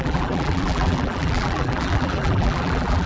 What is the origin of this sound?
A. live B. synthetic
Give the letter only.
B